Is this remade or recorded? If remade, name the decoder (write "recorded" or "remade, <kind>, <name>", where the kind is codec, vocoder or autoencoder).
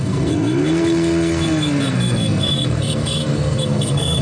remade, codec, SNAC